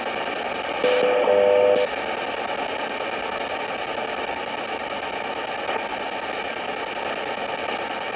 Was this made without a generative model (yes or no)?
yes